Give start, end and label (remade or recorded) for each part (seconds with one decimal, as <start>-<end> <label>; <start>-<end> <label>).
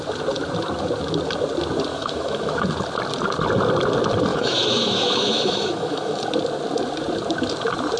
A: 0.0-1.9 recorded; 1.9-2.6 remade; 2.6-4.3 recorded; 4.3-6.2 remade; 6.2-8.0 recorded